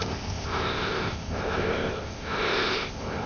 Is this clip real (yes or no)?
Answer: no